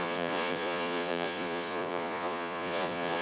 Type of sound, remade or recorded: remade